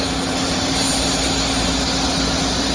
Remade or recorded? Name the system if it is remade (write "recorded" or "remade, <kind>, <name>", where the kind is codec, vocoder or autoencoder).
recorded